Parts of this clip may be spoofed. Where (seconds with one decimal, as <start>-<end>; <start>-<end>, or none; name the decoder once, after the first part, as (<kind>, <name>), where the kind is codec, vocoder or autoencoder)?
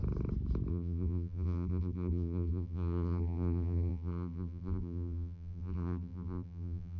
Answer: 0.7-7.0 (vocoder, BigVGAN v2)